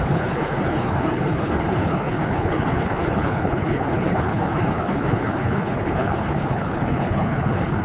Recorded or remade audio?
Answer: remade